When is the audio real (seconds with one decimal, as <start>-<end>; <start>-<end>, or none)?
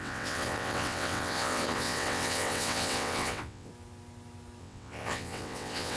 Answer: 3.7-4.6